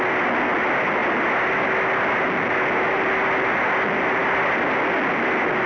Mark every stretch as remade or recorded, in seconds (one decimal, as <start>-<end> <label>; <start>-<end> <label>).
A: 0.0-5.7 recorded